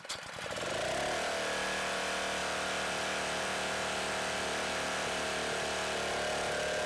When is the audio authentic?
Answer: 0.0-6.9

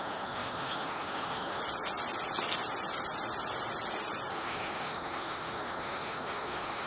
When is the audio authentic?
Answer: 1.6-4.3